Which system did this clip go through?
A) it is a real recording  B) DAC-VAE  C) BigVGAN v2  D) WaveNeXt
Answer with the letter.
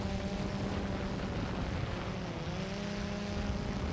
A